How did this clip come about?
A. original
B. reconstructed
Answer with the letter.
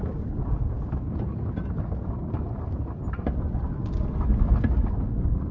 A